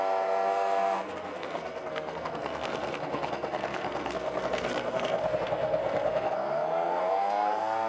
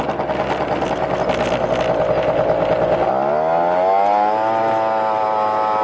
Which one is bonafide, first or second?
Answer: second